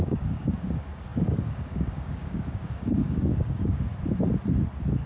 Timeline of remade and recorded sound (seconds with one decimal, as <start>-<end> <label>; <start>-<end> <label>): 0.0-3.9 remade; 3.9-5.1 recorded